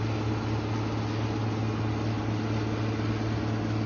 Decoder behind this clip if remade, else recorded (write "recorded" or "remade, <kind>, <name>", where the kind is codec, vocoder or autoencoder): recorded